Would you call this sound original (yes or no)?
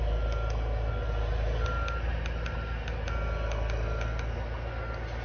yes